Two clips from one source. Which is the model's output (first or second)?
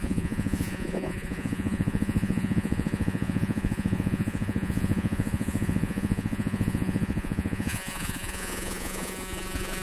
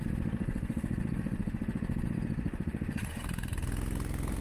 first